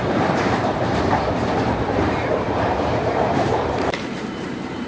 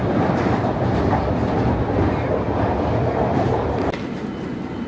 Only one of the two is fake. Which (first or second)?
first